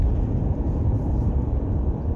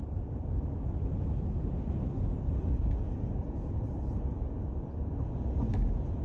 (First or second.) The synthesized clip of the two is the first